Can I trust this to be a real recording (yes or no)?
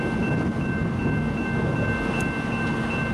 yes